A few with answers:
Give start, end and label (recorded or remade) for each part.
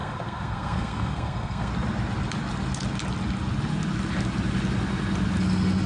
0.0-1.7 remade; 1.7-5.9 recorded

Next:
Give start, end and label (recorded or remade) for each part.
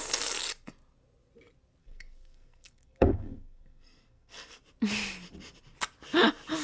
0.0-1.8 recorded; 1.8-4.6 remade; 4.6-6.6 recorded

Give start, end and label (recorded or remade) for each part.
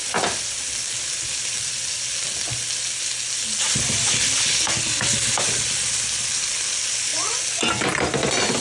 0.0-8.6 recorded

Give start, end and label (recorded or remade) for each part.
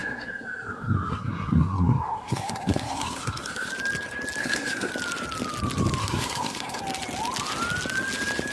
0.0-3.7 remade; 3.7-4.4 recorded; 4.4-4.9 remade; 4.9-6.0 recorded; 6.0-6.8 remade; 6.8-8.5 recorded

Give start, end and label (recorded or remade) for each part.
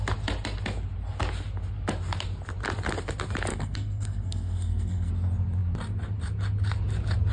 0.0-3.5 recorded; 3.5-5.1 remade; 5.1-7.3 recorded